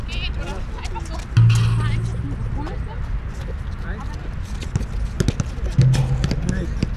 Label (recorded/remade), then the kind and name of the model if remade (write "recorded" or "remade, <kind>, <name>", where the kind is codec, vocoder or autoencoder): recorded